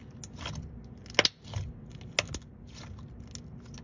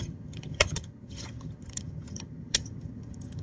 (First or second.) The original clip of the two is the first